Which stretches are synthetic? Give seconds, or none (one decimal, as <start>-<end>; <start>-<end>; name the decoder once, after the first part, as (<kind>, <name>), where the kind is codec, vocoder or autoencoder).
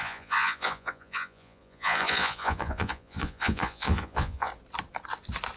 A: 0.0-4.5 (vocoder, Vocos)